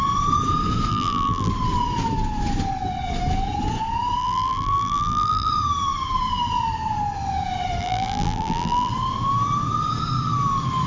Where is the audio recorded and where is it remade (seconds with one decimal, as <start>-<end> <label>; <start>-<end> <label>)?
0.0-0.9 recorded; 0.9-1.5 remade; 1.5-4.2 recorded; 4.2-5.5 remade; 5.5-7.8 recorded; 7.8-8.9 remade; 8.9-10.9 recorded